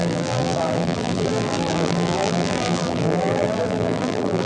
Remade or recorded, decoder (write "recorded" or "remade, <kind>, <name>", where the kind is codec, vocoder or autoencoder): remade, vocoder, BigVGAN v2